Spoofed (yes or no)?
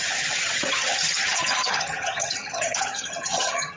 yes